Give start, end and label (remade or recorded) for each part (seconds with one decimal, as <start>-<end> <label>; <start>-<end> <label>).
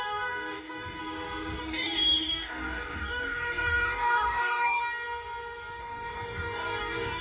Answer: 0.0-1.0 remade; 1.0-1.6 recorded; 1.6-4.8 remade; 4.8-5.8 recorded; 5.8-7.2 remade